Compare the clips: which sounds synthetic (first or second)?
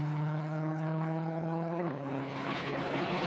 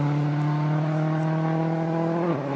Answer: first